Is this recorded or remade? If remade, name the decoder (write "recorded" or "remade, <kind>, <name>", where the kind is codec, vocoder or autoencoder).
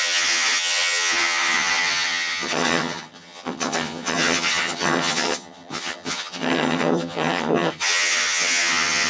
remade, vocoder, HiFi-GAN